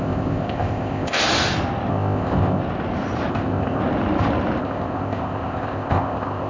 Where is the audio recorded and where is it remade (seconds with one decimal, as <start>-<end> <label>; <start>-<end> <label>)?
0.0-1.2 remade; 1.2-1.9 recorded; 1.9-2.6 remade; 2.6-3.3 recorded; 3.3-3.8 remade; 3.8-4.6 recorded; 4.6-6.5 remade